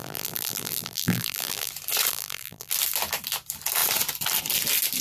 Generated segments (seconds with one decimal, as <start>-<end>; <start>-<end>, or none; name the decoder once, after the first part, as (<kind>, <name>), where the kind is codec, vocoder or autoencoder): 0.0-1.7 (vocoder, BigVGAN v2); 2.1-2.7